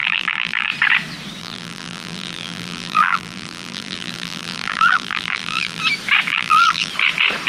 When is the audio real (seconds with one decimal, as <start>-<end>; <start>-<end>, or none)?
0.7-1.4; 5.8-6.3; 6.9-7.5